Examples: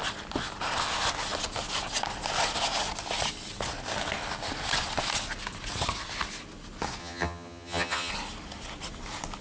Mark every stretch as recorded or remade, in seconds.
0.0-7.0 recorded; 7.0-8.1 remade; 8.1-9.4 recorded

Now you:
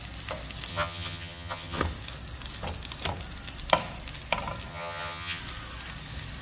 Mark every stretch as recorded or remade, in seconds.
0.0-0.7 recorded; 0.7-1.8 remade; 1.8-4.7 recorded; 4.7-5.4 remade; 5.4-6.4 recorded

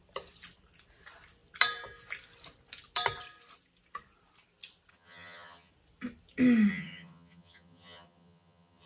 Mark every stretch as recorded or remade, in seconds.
0.0-4.9 recorded; 4.9-5.7 remade; 5.7-6.7 recorded; 6.7-8.9 remade

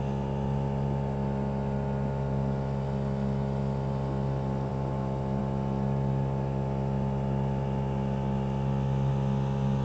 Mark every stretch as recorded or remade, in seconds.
0.0-9.8 recorded

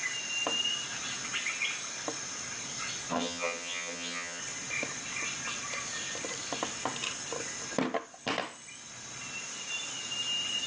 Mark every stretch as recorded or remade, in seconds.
0.0-3.1 recorded; 3.1-4.4 remade; 4.4-10.7 recorded

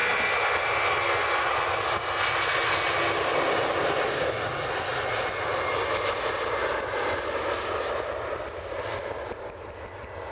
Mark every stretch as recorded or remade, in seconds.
0.0-10.3 recorded

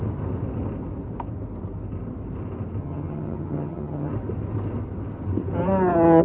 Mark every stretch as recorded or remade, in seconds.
0.0-2.8 recorded; 2.8-4.1 remade; 4.1-6.2 recorded

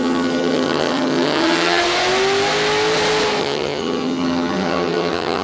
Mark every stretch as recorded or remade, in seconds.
0.0-1.8 remade; 1.8-3.4 recorded; 3.4-5.4 remade